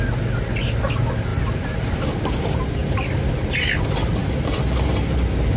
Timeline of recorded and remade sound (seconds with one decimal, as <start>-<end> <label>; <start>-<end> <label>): 0.0-1.3 recorded; 1.3-2.3 remade; 2.3-2.8 recorded; 2.8-3.3 remade; 3.3-4.2 recorded; 4.2-5.6 remade